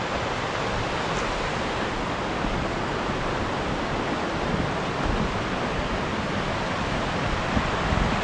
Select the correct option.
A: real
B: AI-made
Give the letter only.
A